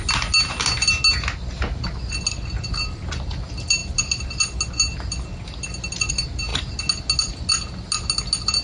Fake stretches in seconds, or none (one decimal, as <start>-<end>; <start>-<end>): none